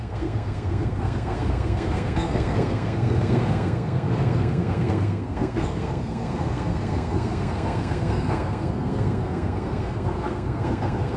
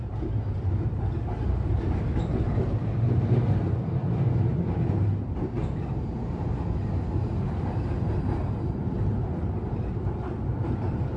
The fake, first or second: first